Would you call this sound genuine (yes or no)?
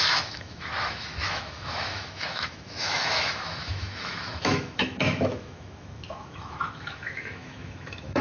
no